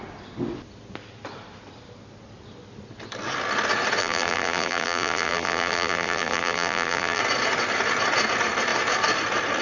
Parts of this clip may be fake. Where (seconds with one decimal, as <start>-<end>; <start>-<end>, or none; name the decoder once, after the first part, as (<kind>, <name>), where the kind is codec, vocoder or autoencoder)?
4.0-7.2 (vocoder, BigVGAN v2)